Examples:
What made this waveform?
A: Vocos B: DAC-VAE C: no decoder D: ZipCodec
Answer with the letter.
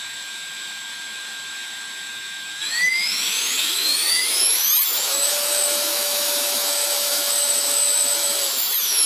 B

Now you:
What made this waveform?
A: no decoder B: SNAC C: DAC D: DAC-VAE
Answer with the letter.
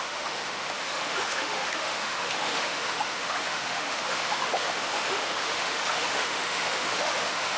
D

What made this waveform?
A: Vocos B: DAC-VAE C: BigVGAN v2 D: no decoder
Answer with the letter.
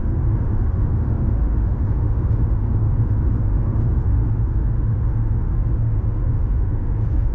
B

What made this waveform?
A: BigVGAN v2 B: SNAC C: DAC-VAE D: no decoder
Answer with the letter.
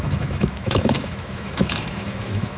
C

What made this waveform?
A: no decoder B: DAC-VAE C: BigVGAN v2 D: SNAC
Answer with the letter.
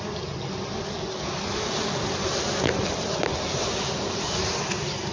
A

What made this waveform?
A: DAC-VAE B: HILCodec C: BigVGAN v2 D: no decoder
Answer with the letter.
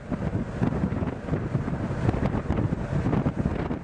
D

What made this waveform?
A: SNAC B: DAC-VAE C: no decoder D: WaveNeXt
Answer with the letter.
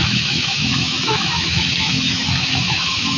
B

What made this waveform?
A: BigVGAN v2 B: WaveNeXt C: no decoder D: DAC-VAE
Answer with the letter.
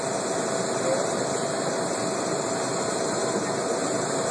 C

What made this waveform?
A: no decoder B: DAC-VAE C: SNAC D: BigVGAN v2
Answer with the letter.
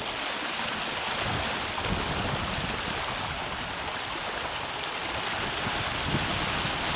A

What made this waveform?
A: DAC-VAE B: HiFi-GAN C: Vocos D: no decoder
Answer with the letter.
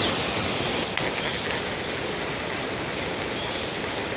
D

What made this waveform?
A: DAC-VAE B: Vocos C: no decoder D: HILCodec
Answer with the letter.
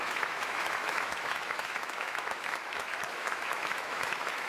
A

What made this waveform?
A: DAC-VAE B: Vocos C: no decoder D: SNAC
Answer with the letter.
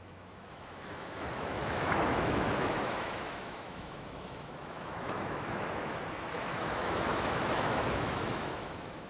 A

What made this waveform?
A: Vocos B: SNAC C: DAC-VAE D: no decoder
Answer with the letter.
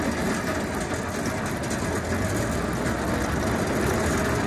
D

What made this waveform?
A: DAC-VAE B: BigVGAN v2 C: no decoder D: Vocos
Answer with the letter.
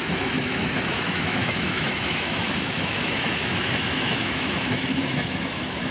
A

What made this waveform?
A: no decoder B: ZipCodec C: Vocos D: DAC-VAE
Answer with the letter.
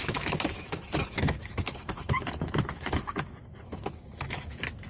D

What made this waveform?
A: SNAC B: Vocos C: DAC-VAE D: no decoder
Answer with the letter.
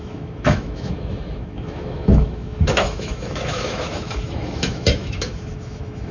C